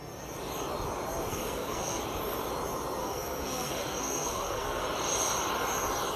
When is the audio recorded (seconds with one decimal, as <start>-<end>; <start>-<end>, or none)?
0.0-1.3; 2.0-3.0; 4.8-6.2